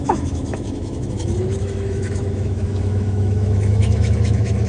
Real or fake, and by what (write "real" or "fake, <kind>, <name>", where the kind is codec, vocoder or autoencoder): fake, autoencoder, DAC-VAE